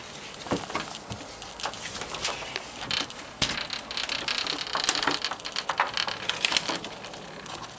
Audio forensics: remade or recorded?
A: recorded